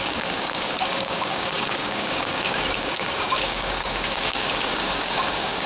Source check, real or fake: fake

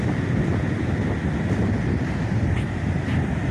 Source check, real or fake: real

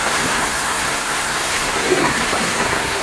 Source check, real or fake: fake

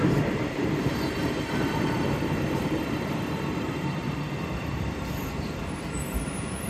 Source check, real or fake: fake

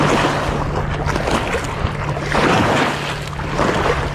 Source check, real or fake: real